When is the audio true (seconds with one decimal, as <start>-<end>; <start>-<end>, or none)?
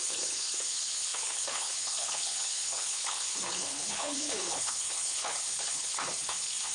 none